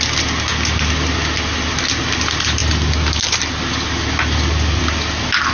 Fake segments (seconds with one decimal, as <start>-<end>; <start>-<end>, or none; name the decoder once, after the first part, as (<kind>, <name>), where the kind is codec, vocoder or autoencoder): none

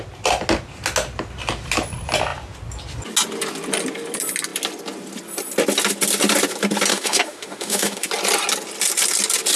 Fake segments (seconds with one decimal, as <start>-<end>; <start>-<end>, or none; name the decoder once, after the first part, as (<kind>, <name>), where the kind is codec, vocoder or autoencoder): 6.9-8.1 (autoencoder, DAC-VAE)

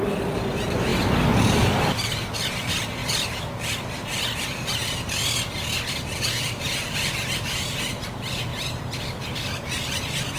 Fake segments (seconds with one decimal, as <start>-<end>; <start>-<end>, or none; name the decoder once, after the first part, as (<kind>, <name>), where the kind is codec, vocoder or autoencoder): none

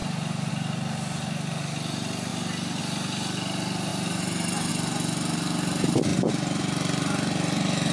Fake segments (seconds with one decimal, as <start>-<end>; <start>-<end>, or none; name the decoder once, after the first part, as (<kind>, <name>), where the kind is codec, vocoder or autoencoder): 3.9-4.7 (vocoder, BigVGAN v2)

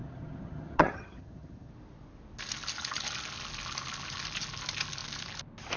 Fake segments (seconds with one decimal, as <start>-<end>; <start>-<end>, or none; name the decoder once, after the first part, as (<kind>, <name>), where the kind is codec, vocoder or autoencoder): 0.0-1.7 (vocoder, HiFi-GAN)

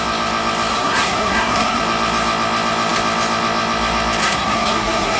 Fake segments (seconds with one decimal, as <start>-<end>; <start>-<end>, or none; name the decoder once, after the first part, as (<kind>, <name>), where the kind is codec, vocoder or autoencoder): 0.7-1.8 (codec, SNAC); 4.2-5.2

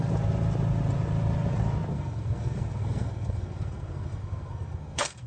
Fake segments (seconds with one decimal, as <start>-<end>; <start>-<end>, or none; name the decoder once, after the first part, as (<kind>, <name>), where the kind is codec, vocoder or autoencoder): 1.9-5.3 (codec, SNAC)

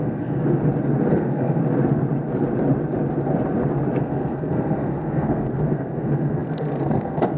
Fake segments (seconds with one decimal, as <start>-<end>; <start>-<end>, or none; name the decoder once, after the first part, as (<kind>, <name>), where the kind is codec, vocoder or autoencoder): 0.0-0.4 (codec, SNAC); 1.1-1.6; 4.0-7.4